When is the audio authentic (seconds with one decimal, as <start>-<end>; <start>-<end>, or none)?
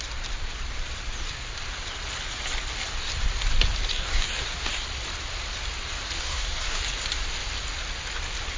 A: 0.0-3.9; 4.7-6.2; 6.8-8.6